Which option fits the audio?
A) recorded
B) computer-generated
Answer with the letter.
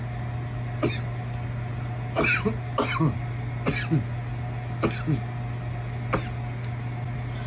A